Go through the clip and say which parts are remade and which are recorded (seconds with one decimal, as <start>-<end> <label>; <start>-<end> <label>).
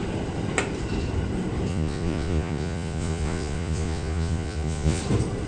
0.0-1.7 recorded; 1.7-5.0 remade; 5.0-5.5 recorded